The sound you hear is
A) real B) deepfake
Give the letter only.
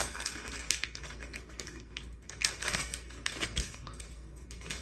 B